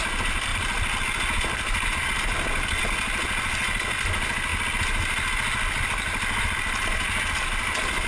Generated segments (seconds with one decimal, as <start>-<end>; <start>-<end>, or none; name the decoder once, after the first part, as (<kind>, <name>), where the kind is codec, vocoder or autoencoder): none